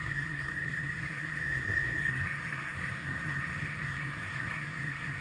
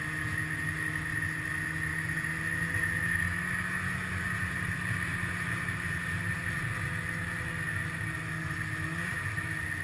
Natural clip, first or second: second